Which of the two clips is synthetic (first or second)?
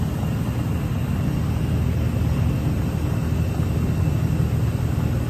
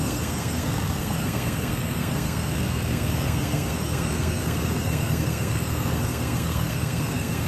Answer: second